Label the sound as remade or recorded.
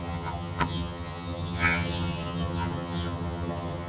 remade